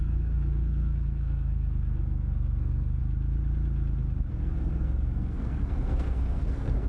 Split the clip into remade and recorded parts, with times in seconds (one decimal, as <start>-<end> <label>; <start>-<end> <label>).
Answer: 0.0-3.0 remade; 3.0-4.3 recorded; 4.3-6.9 remade